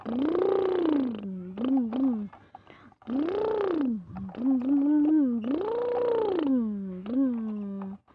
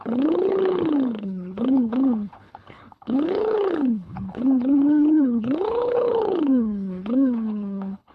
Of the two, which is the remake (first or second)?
second